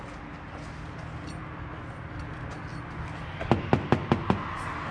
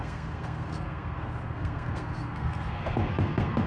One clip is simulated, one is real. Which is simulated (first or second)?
second